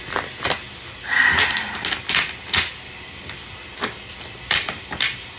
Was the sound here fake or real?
real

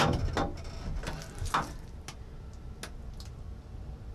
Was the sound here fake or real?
real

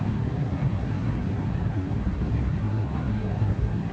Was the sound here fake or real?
fake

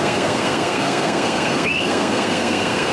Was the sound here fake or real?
fake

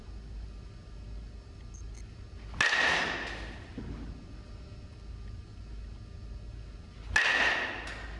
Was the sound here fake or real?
real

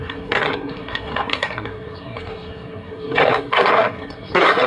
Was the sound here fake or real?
fake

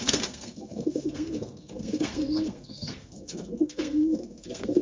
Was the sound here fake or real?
fake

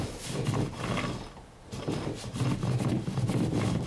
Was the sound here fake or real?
real